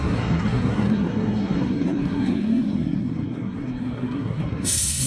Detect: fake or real fake